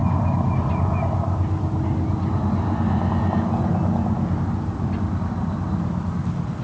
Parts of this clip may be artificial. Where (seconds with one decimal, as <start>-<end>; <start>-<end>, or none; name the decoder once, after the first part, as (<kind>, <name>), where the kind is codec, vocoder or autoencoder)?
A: none

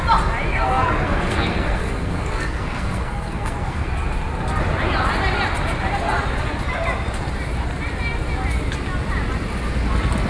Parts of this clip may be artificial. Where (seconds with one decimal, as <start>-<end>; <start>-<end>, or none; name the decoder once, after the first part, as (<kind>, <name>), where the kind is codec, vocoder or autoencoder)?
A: 0.5-3.9 (codec, SNAC)

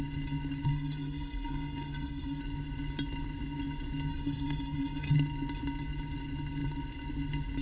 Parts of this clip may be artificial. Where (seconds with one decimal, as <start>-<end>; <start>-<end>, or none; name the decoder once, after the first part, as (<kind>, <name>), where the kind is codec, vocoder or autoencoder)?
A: 0.7-2.4 (codec, SNAC); 4.1-5.1

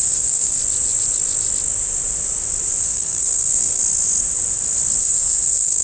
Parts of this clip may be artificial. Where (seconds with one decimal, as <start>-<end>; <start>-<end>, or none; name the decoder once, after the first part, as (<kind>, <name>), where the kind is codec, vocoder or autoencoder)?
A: 0.0-0.6 (codec, SNAC); 2.8-3.8; 5.0-5.8

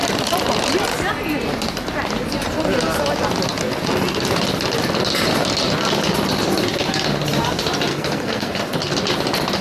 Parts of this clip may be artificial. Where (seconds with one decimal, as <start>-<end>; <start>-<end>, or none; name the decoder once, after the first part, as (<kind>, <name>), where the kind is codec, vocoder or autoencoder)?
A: 7.9-8.5 (codec, SNAC)

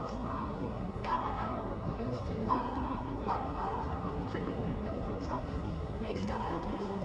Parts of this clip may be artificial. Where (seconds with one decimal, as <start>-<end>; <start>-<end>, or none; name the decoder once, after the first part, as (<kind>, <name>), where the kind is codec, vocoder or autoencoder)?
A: 0.0-7.0 (codec, SNAC)

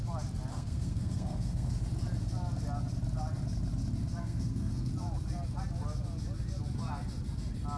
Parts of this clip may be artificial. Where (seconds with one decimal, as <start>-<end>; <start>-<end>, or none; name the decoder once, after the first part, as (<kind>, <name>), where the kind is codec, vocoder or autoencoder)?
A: 0.5-1.7 (codec, SNAC); 4.2-4.9